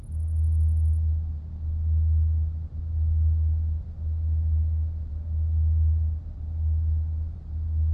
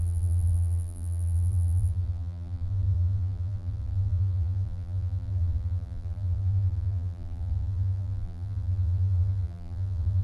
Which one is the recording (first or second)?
first